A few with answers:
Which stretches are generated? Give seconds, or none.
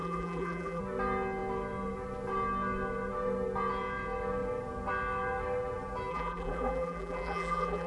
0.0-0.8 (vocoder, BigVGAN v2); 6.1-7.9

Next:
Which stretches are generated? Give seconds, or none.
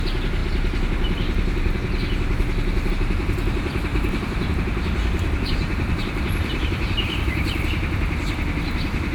3.9-4.5 (vocoder, BigVGAN v2); 5.0-7.6